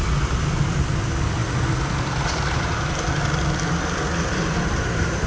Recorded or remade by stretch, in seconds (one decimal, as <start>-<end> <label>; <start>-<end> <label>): 0.0-5.3 recorded